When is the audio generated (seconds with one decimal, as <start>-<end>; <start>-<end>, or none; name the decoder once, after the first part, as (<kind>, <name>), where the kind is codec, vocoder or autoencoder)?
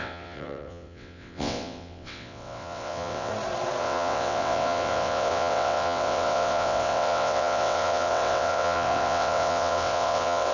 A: 0.0-3.3 (vocoder, WaveNeXt); 3.8-10.5